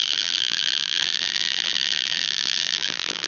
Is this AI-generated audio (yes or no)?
yes